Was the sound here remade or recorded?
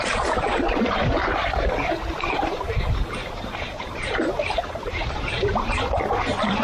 remade